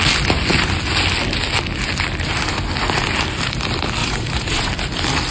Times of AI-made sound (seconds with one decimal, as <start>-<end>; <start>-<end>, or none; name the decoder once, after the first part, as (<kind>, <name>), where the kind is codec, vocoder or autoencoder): 4.0-4.7 (vocoder, Vocos)

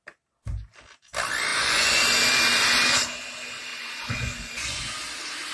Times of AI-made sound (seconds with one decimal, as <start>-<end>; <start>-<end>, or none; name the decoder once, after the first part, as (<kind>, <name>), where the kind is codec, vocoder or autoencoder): 1.5-2.0 (vocoder, Vocos); 3.7-4.8

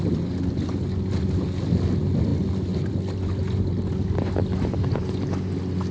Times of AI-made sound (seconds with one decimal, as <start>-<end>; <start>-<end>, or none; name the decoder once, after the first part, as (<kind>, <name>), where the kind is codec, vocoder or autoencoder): none

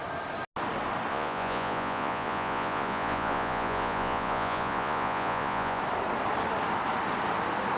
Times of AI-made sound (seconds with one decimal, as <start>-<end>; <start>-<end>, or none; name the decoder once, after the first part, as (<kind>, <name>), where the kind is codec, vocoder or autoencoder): 1.1-5.8 (vocoder, Vocos)

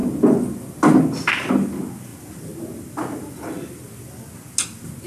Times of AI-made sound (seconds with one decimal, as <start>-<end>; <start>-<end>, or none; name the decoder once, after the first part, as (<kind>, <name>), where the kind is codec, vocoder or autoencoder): none

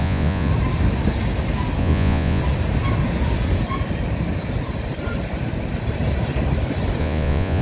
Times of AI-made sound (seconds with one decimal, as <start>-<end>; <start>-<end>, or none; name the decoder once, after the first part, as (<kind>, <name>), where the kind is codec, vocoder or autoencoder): 0.0-0.5 (vocoder, Vocos); 1.8-2.4; 7.0-7.6

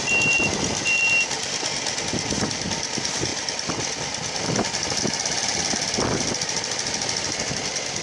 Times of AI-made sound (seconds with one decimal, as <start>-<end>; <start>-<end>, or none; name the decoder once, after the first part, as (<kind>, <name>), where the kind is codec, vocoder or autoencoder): none

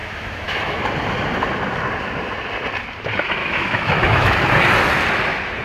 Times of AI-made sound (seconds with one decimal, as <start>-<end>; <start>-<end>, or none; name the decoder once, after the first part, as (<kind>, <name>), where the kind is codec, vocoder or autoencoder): 0.0-0.8 (autoencoder, DAC-VAE); 3.4-4.3